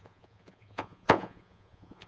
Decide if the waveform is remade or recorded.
remade